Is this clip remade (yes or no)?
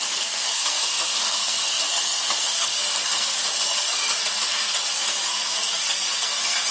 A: yes